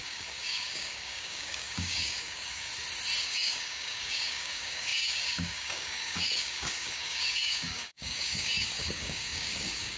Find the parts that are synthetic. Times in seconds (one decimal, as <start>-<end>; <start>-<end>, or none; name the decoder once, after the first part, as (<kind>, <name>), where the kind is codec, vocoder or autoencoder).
0.0-2.7 (codec, DAC); 3.2-10.0